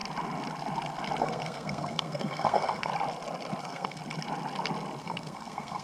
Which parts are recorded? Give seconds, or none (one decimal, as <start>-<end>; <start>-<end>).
0.0-1.2; 2.9-3.6; 4.0-5.0